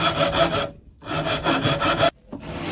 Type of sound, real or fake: real